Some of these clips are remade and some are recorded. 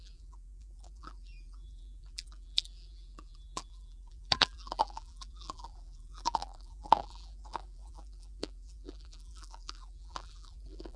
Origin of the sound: remade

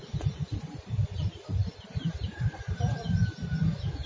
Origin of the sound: remade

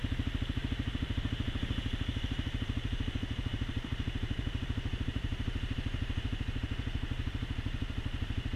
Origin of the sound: remade